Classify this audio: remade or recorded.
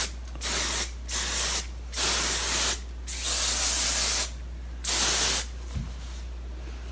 recorded